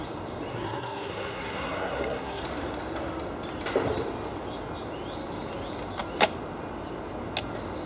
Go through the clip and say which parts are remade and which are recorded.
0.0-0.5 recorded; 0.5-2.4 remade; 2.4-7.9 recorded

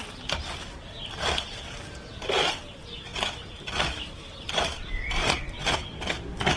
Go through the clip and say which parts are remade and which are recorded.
0.0-6.6 recorded

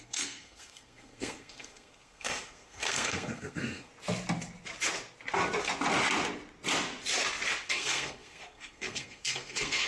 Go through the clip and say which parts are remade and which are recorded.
0.0-3.9 remade; 3.9-7.7 recorded; 7.7-9.9 remade

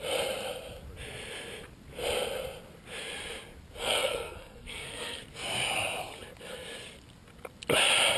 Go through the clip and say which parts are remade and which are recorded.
0.0-3.8 recorded; 3.8-5.2 remade; 5.2-8.2 recorded

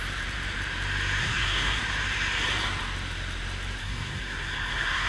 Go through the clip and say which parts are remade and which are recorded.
0.0-1.2 recorded; 1.2-1.8 remade; 1.8-3.8 recorded; 3.8-5.1 remade